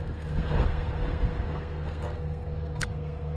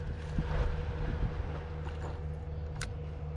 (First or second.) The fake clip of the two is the first